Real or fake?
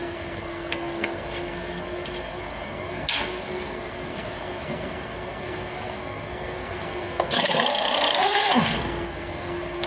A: fake